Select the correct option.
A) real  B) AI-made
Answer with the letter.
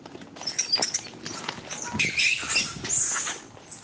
A